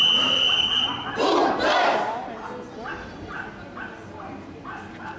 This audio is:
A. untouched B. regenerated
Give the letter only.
A